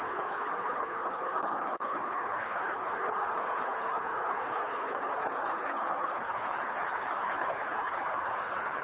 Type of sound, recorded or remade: remade